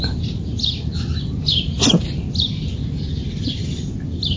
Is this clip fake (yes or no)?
no